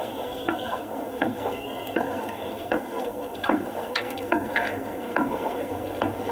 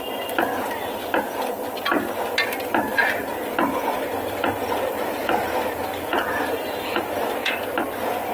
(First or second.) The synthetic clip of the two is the first